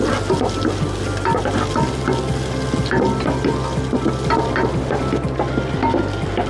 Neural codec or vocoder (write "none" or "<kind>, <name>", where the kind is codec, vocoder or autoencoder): none